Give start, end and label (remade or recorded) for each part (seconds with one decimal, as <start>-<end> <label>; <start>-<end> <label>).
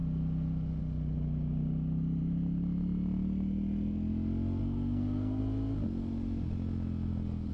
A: 0.0-4.6 recorded; 4.6-5.4 remade; 5.4-7.5 recorded